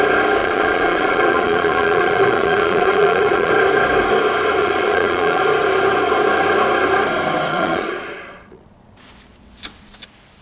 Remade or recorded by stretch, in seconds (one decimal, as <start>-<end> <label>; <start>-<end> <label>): 0.0-0.4 recorded; 0.4-3.5 remade; 3.5-4.6 recorded; 4.6-5.4 remade; 5.4-7.5 recorded; 7.5-9.1 remade; 9.1-10.4 recorded